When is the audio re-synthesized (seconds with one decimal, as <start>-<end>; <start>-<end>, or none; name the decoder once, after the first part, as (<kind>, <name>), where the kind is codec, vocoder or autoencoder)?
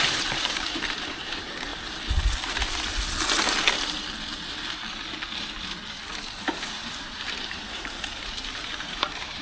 0.0-1.7 (vocoder, BigVGAN v2); 6.4-9.4